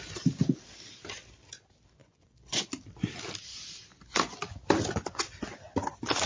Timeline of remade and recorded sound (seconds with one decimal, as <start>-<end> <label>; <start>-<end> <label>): 0.0-2.0 recorded; 2.0-2.7 remade; 2.7-6.3 recorded